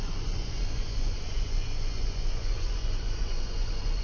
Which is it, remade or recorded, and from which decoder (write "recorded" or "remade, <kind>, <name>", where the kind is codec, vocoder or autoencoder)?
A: remade, vocoder, Vocos